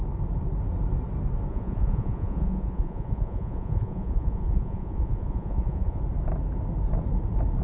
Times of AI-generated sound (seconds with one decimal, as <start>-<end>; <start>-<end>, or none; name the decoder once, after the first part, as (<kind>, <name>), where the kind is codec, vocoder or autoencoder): 1.5-6.0 (vocoder, Vocos)